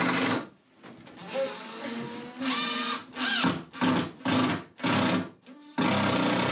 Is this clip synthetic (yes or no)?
no